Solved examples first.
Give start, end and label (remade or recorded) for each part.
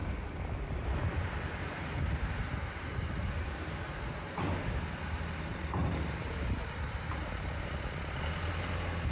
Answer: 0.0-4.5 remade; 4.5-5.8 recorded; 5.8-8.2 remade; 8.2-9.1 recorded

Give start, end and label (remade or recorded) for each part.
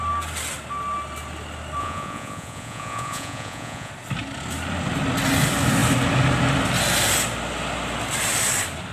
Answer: 0.0-1.8 recorded; 1.8-3.9 remade; 3.9-8.9 recorded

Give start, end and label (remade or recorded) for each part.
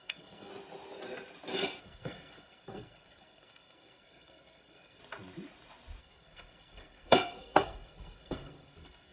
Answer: 0.0-0.5 remade; 0.5-1.8 recorded; 1.8-5.0 remade; 5.0-6.0 recorded; 6.0-9.1 remade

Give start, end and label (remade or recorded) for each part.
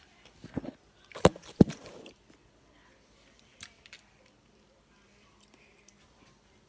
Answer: 0.0-1.3 recorded; 1.3-5.3 remade; 5.3-6.7 recorded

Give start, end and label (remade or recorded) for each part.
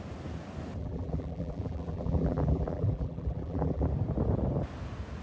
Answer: 0.0-0.8 recorded; 0.8-3.9 remade; 3.9-5.2 recorded